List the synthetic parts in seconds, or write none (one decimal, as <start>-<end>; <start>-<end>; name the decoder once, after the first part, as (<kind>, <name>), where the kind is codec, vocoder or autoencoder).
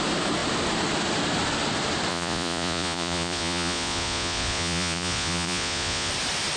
2.1-6.1 (vocoder, Vocos)